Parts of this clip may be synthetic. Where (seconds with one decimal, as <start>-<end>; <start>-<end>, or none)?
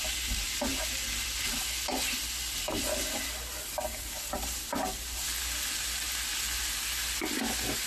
none